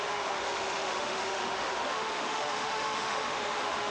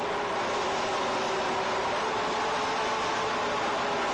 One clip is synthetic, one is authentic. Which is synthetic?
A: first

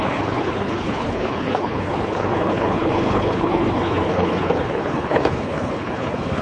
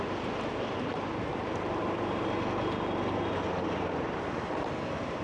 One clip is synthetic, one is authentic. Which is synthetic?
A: first